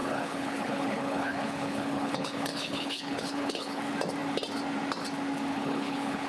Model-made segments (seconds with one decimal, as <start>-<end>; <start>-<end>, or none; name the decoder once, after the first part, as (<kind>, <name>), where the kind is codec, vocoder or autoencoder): 0.0-3.8 (codec, HILCodec); 5.5-6.3